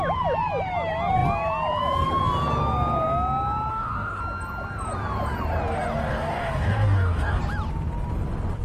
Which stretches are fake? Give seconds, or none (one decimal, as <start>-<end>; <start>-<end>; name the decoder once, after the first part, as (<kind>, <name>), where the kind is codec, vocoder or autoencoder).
3.7-4.2 (codec, DAC); 6.0-7.4